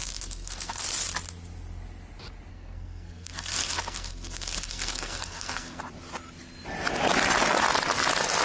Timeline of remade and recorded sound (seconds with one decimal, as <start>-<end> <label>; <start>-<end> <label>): 0.0-0.8 remade; 0.8-2.5 recorded; 2.5-5.8 remade; 5.8-8.4 recorded